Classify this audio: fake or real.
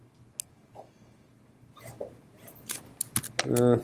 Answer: real